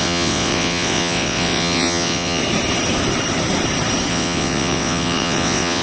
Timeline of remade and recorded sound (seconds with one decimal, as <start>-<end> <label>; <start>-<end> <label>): 0.0-2.4 remade; 2.4-4.1 recorded; 4.1-5.8 remade